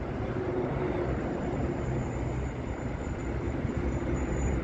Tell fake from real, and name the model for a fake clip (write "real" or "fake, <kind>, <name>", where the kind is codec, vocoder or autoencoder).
fake, vocoder, BigVGAN v2